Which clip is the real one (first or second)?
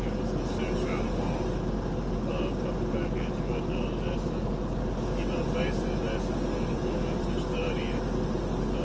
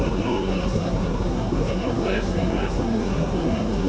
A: first